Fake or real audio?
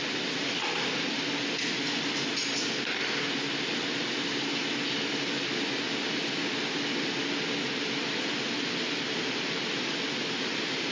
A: real